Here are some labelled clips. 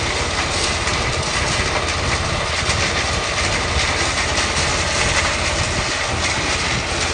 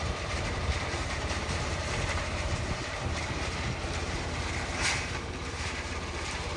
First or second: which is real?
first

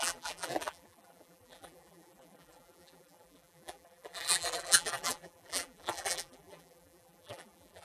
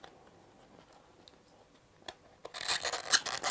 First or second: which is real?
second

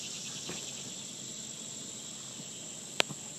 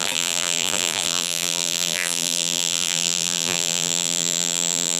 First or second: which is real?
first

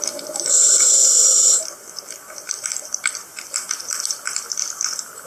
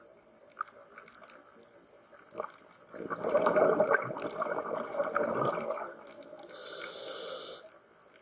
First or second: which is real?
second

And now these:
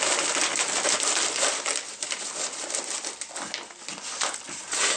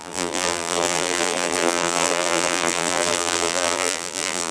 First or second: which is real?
first